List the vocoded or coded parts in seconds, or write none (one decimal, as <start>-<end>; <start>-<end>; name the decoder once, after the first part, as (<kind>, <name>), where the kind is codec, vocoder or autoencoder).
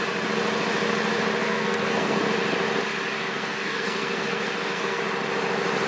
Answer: 1.4-2.2 (codec, SNAC); 3.2-5.0